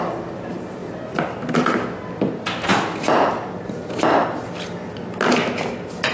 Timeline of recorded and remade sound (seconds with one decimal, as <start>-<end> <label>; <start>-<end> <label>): 0.0-6.1 recorded